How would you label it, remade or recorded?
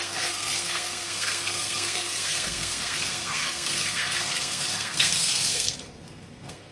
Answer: remade